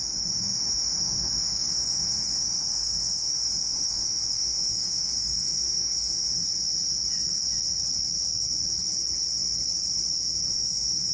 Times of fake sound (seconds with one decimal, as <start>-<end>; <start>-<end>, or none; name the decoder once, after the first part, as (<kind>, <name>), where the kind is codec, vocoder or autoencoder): 0.0-6.4 (autoencoder, DAC-VAE); 10.5-11.1